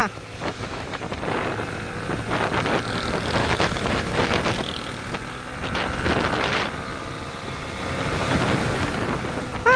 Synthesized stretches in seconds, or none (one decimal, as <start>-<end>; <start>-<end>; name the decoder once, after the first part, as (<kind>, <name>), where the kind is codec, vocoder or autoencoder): 0.0-1.0 (autoencoder, DAC-VAE); 3.4-4.4